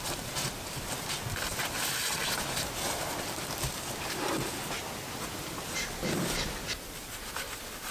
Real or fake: real